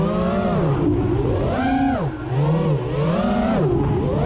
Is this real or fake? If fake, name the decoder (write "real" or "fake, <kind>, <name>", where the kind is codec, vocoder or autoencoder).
real